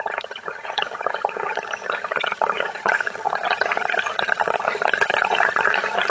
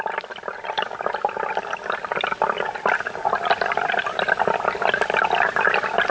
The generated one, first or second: first